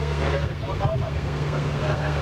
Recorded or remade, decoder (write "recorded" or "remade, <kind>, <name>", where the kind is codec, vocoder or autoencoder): remade, codec, SNAC